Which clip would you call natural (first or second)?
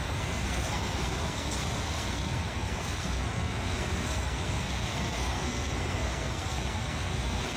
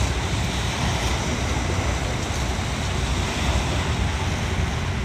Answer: second